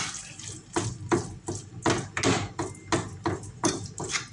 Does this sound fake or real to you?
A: real